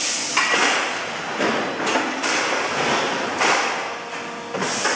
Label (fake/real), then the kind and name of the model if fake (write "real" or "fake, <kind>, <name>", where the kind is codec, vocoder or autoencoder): real